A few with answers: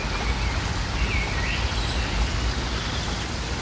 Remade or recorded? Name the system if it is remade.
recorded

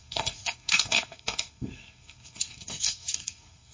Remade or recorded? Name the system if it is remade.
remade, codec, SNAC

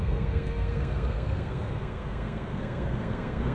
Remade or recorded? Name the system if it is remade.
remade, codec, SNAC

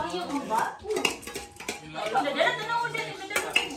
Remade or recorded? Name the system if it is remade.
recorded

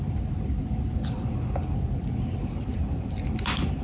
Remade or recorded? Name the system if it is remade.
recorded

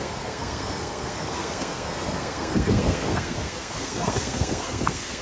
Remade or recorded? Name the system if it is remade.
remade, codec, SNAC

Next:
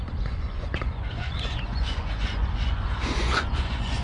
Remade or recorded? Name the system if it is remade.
remade, vocoder, Vocos